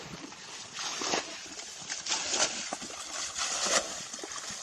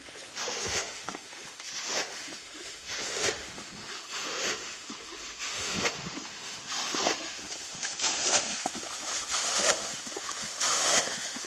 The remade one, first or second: second